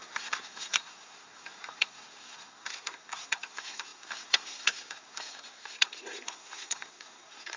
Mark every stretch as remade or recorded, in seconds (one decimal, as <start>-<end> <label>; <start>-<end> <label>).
0.0-7.6 remade